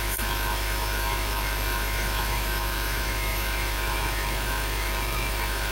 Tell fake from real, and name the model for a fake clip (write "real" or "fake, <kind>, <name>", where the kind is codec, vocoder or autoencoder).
fake, autoencoder, DAC-VAE